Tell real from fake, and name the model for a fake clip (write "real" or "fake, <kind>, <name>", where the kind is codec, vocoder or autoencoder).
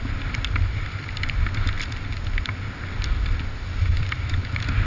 real